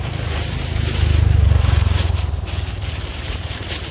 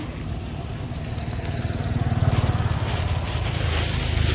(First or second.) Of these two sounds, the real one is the second